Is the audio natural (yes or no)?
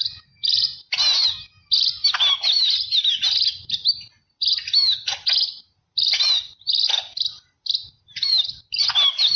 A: yes